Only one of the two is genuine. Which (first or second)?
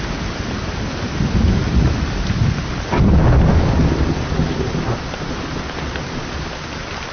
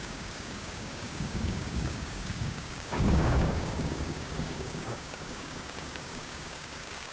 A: first